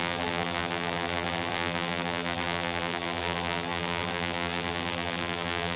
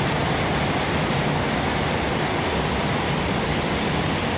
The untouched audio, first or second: second